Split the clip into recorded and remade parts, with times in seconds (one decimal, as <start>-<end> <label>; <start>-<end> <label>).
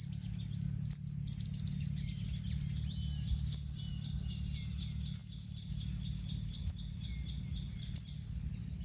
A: 0.0-8.8 recorded